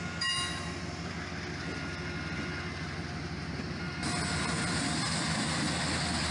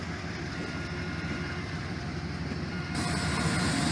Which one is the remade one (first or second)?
second